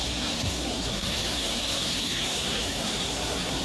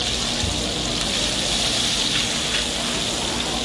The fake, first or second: first